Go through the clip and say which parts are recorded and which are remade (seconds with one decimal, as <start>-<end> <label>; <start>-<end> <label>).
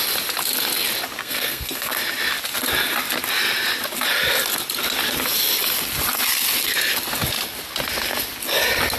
0.0-1.2 recorded; 1.2-1.9 remade; 1.9-9.0 recorded